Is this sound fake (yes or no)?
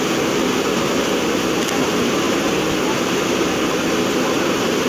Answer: no